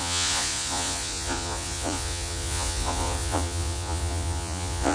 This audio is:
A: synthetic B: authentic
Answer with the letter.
A